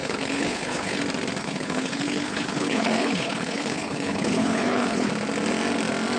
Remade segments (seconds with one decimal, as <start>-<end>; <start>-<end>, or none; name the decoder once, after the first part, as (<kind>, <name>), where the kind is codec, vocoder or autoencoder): 0.0-1.0 (codec, HILCodec); 1.4-5.1